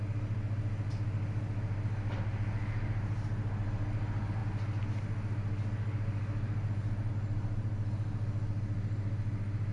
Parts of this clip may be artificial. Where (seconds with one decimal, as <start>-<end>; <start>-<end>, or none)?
none